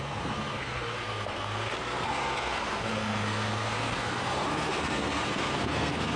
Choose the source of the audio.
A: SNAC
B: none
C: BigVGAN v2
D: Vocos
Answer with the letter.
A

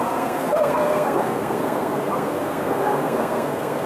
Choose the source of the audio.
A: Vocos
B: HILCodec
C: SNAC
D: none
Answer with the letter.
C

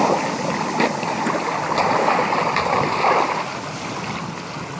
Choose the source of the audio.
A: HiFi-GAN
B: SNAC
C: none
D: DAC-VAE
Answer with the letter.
C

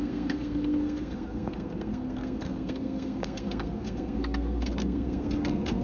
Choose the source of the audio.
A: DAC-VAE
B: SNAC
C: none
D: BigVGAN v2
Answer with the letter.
B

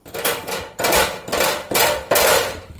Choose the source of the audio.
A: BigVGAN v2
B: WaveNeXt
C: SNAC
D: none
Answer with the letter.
D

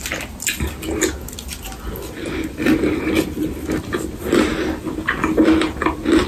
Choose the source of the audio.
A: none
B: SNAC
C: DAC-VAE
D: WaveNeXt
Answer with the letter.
A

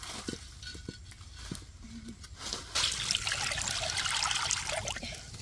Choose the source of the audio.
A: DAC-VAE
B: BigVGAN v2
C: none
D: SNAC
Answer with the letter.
C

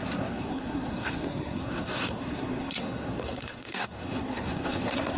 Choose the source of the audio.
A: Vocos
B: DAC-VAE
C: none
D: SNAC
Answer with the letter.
D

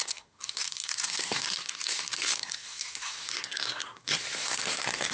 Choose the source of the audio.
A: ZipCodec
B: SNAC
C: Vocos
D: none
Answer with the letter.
B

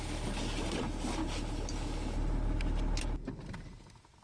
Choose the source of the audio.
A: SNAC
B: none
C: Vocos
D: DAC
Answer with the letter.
B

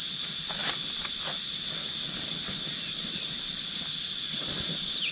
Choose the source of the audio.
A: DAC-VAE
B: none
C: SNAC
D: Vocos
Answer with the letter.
B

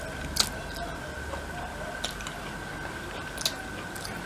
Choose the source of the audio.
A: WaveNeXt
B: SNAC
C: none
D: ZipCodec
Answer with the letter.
C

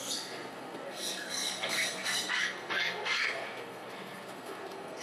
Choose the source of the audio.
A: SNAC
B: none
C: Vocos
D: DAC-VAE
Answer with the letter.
A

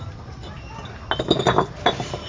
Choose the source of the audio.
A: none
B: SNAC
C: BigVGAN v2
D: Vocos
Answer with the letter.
A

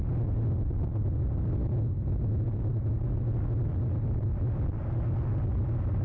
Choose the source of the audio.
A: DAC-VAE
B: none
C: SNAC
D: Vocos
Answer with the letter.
B